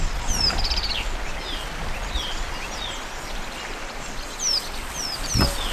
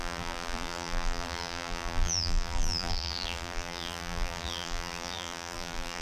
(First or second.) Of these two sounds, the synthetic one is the second